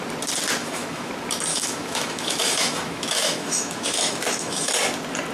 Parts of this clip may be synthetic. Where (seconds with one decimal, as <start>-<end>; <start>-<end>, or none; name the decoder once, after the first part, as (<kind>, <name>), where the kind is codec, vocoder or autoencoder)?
0.6-1.1 (autoencoder, DAC-VAE); 1.5-4.7